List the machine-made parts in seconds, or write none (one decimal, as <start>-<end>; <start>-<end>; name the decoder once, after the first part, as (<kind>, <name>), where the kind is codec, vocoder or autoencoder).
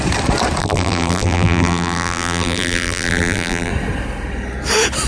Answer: 0.6-3.7 (vocoder, BigVGAN v2)